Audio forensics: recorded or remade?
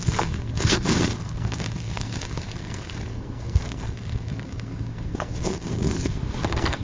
remade